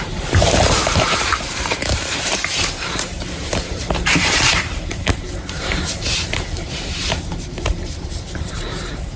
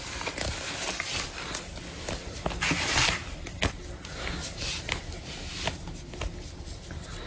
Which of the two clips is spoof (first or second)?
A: first